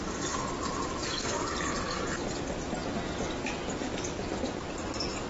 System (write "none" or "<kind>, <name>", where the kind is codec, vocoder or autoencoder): none